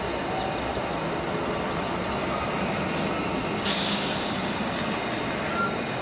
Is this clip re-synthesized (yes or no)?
no